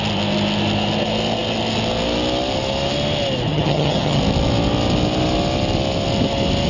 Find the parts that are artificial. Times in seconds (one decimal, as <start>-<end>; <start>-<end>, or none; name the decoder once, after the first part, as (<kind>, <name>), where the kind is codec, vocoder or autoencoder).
3.5-4.2 (vocoder, HiFi-GAN)